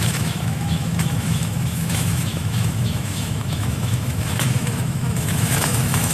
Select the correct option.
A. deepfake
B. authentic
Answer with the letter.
A